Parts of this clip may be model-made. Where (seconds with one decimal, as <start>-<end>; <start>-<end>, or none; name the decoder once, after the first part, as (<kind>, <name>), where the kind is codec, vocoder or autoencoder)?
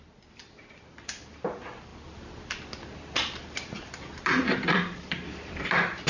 0.0-6.1 (vocoder, BigVGAN v2)